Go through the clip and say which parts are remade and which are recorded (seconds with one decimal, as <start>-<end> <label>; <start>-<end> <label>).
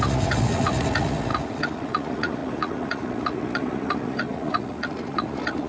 0.0-5.7 remade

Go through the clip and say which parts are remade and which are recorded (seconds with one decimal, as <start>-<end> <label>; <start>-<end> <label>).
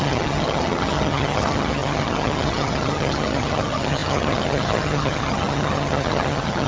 0.0-6.7 remade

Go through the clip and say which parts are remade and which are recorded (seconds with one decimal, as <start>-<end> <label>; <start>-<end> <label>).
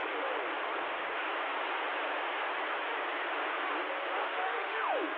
0.0-4.2 recorded; 4.2-5.2 remade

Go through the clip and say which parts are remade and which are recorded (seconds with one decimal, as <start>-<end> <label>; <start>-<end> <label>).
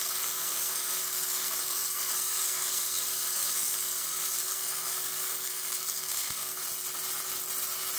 0.0-6.6 remade; 6.6-8.0 recorded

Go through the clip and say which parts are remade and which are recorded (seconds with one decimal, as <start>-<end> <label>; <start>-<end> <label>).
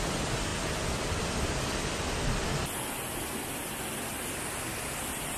0.0-5.4 recorded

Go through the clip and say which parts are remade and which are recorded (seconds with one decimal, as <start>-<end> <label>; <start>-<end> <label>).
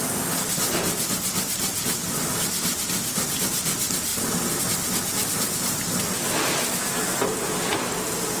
0.0-8.4 recorded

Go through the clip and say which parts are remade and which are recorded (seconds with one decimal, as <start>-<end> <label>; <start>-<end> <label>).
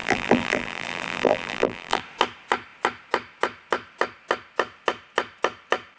0.0-2.0 remade; 2.0-6.0 recorded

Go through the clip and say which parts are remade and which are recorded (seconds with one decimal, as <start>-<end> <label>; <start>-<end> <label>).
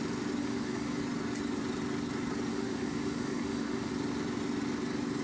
0.0-0.4 recorded; 0.4-1.0 remade; 1.0-2.5 recorded; 2.5-3.9 remade; 3.9-5.2 recorded